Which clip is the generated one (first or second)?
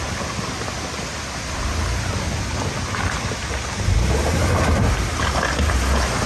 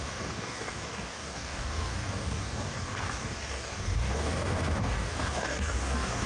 second